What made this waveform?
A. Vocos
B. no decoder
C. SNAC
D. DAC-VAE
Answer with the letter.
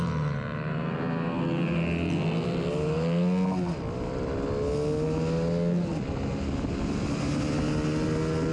B